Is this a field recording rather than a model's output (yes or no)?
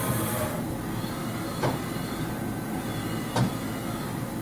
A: yes